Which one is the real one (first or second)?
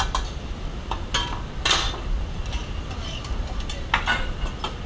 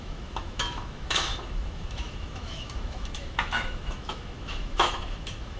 first